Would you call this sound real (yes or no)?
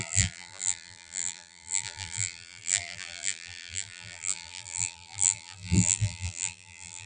no